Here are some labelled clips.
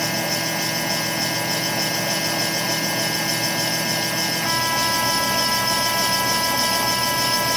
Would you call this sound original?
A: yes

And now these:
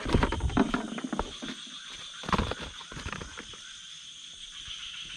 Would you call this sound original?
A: yes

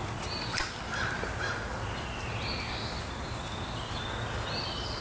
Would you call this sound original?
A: yes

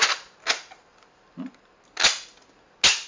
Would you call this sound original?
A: yes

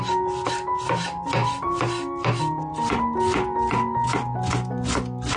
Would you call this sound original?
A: yes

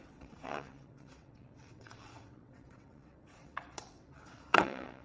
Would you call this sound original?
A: no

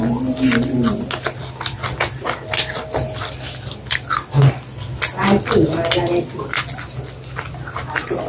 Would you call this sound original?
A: yes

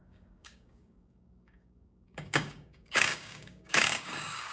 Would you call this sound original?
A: no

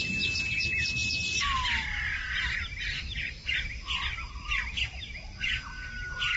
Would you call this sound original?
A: yes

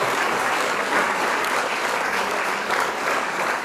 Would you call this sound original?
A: no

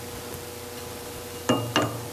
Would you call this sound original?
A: yes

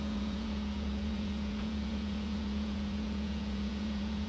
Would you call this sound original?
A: no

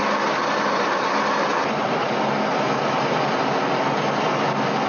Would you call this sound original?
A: yes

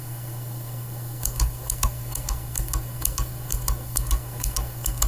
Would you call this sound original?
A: no